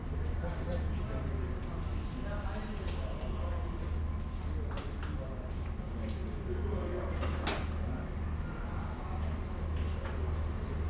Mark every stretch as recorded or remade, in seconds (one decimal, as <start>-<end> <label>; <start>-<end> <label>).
0.0-10.9 recorded